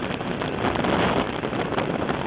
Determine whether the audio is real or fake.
real